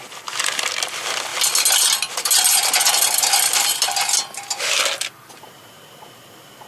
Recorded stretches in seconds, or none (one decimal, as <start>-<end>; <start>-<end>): 0.0-6.7